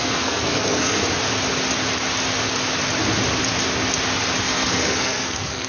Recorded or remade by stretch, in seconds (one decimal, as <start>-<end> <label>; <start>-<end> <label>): 0.0-1.0 remade; 1.0-4.4 recorded; 4.4-5.7 remade